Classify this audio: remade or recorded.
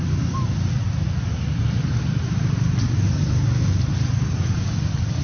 remade